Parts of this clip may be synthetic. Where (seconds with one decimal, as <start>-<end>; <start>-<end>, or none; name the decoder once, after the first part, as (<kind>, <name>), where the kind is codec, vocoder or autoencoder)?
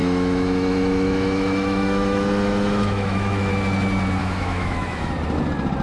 0.0-3.5 (autoencoder, DAC-VAE); 4.2-5.1